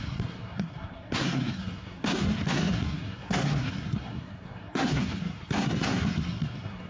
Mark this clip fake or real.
fake